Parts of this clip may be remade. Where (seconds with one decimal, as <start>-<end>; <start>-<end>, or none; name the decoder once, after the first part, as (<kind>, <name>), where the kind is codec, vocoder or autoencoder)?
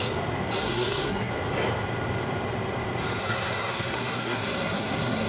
0.6-1.3 (codec, SNAC); 3.2-5.3